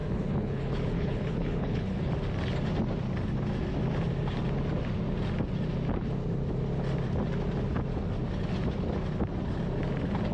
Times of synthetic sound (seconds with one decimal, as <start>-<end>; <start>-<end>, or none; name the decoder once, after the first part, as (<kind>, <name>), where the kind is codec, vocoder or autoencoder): 0.0-2.1 (codec, HILCodec)